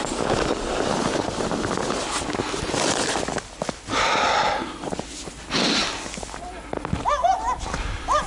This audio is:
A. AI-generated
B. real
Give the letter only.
B